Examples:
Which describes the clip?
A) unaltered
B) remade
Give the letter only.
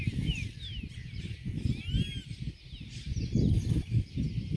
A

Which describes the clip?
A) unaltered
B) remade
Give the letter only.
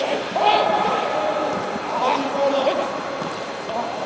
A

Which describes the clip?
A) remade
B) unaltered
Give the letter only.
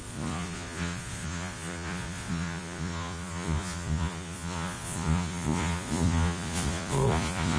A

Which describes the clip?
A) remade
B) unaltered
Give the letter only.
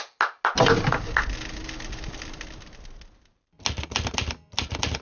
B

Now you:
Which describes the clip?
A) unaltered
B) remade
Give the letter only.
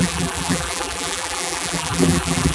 B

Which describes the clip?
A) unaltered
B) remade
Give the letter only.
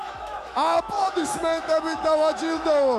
B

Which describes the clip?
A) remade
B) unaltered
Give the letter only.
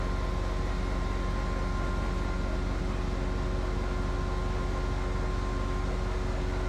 B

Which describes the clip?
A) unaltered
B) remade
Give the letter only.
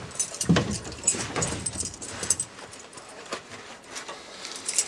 B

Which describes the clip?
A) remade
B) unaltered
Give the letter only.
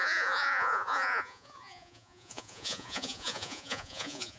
A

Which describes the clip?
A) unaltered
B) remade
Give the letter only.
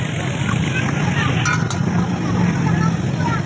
A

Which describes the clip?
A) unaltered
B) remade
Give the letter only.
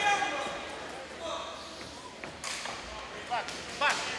A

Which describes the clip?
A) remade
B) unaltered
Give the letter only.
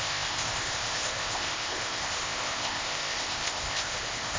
A